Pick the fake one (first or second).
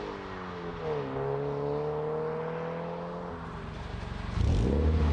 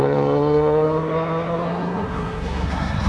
second